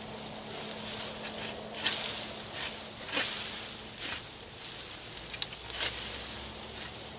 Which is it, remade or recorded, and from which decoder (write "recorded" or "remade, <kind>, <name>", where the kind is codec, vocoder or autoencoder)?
recorded